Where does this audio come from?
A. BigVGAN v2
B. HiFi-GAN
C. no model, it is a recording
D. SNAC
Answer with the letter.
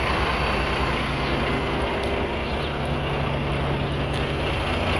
C